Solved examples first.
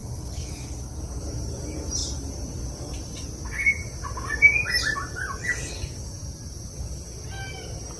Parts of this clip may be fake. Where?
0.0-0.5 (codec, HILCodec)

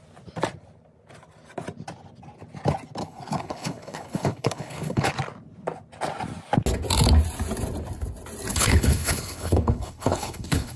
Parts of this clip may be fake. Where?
3.0-5.1 (codec, HILCodec); 8.5-10.8

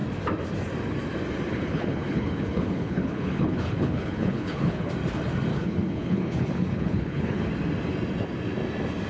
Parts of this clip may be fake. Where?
1.5-4.9 (codec, HILCodec); 5.5-7.5

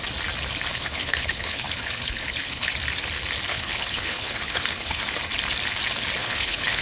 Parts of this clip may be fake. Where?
0.7-2.7 (codec, HILCodec); 3.5-5.0; 6.2-6.8

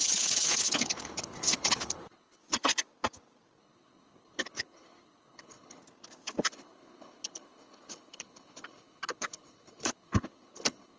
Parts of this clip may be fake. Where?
0.0-2.4 (codec, HILCodec); 3.6-5.8; 6.4-11.0

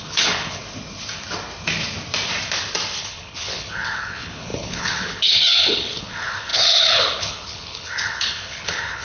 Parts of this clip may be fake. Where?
0.0-0.6 (codec, HILCodec); 3.0-9.0